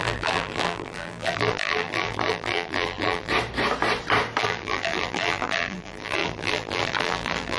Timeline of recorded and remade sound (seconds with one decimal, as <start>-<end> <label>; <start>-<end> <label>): 0.0-3.3 remade; 3.3-4.4 recorded; 4.4-7.6 remade